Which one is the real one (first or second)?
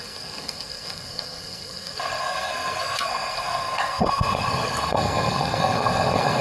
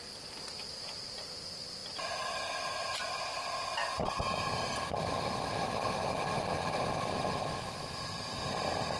second